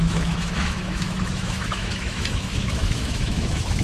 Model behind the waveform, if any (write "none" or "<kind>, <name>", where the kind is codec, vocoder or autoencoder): autoencoder, DAC-VAE